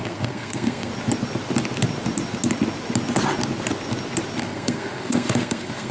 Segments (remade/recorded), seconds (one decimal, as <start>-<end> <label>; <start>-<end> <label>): 0.0-0.9 remade; 0.9-4.4 recorded; 4.4-5.9 remade